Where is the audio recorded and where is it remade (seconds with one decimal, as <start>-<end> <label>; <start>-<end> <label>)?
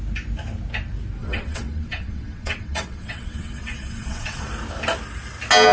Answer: 0.0-1.2 recorded; 1.2-4.5 remade; 4.5-5.7 recorded